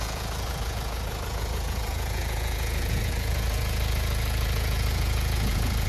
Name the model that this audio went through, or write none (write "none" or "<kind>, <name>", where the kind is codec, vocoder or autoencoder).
vocoder, Vocos